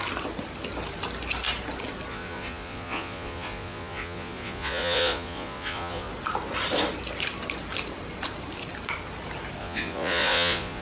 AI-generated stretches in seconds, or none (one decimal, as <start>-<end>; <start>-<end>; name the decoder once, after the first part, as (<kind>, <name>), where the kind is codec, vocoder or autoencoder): 2.1-6.1 (vocoder, Vocos); 9.6-10.8